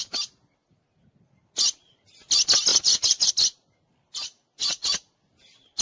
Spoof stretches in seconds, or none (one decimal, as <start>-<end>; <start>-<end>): 2.7-3.3; 4.6-5.1